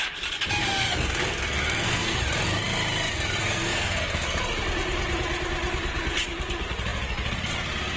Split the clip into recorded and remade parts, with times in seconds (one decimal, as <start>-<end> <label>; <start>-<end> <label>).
0.0-0.6 recorded; 0.6-2.2 remade; 2.2-3.4 recorded; 3.4-4.4 remade; 4.4-8.0 recorded